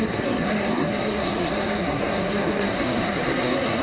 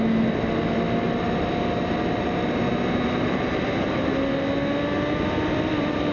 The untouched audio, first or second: second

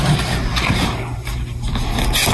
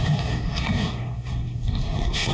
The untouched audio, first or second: first